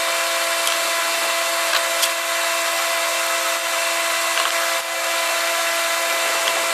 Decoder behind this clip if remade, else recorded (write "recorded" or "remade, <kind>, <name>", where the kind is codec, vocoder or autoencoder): recorded